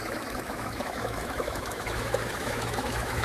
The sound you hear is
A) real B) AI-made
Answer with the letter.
B